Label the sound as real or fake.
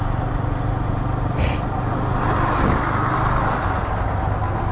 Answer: real